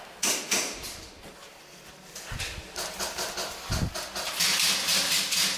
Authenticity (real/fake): real